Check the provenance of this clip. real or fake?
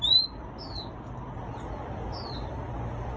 real